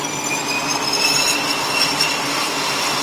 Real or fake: real